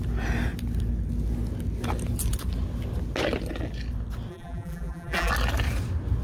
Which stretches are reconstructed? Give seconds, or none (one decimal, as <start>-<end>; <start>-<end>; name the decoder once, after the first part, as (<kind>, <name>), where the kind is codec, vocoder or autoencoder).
4.3-5.3 (vocoder, BigVGAN v2)